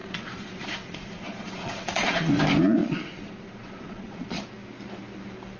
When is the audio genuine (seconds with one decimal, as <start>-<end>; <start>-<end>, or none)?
2.3-2.8; 4.4-5.6